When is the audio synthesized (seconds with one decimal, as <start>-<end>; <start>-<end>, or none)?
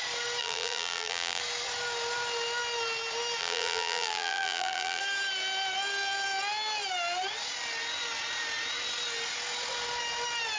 0.4-1.4; 3.4-5.0